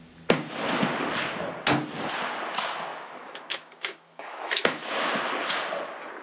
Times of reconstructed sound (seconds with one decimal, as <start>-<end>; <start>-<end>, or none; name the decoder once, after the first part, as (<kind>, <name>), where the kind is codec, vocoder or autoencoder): 2.9-4.8 (autoencoder, DAC-VAE)